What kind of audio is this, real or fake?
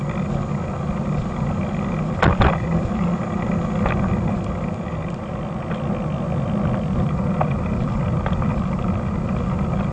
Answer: real